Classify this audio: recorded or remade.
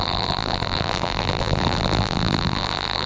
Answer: remade